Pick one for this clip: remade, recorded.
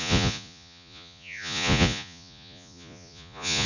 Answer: remade